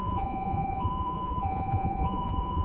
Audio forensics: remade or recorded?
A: remade